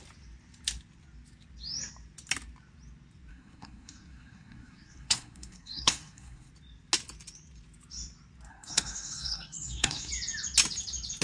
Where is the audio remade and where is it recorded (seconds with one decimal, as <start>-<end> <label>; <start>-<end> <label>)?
0.0-3.3 recorded; 3.3-6.5 remade; 6.5-8.5 recorded; 8.5-10.1 remade; 10.1-11.2 recorded